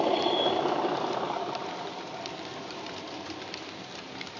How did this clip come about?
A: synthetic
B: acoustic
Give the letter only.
B